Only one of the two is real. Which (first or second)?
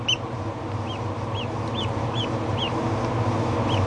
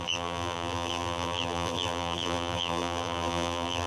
first